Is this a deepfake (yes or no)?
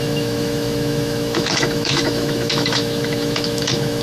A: yes